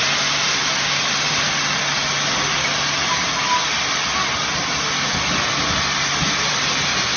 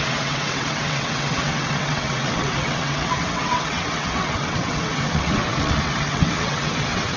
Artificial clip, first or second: second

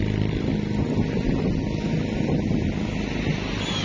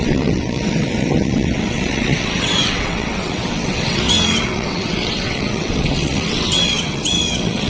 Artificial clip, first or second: second